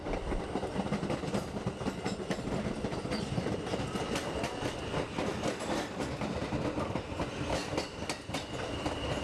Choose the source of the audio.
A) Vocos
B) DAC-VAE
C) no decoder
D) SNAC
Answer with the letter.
C